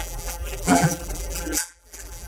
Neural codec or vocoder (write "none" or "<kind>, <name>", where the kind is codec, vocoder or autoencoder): vocoder, BigVGAN v2